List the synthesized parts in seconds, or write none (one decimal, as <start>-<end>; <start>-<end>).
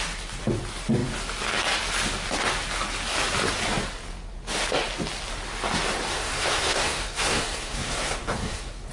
6.1-8.9